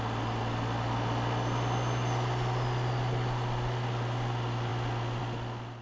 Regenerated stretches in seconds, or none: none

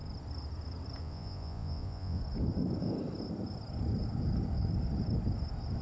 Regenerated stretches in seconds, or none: 1.0-2.2 (vocoder, Vocos)

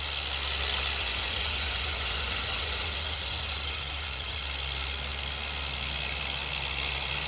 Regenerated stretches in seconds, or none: 1.0-4.4 (vocoder, Vocos)

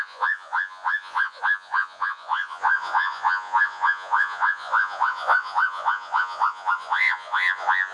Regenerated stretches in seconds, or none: 0.0-7.9 (vocoder, Vocos)

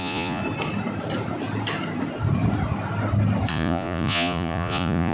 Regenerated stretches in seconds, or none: 0.0-0.4 (vocoder, Vocos); 3.5-5.1

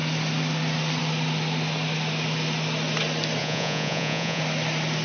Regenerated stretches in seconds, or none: 3.4-4.4 (vocoder, Vocos)

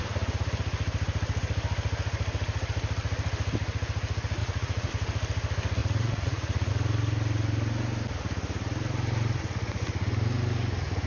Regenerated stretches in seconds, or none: 4.4-4.9 (vocoder, Vocos); 5.8-6.7

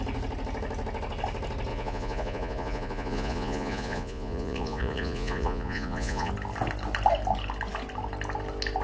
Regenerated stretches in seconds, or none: 1.7-6.3 (vocoder, Vocos)